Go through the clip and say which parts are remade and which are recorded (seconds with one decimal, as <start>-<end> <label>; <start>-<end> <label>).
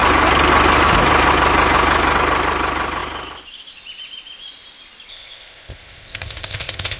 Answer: 0.0-5.1 recorded; 5.1-7.0 remade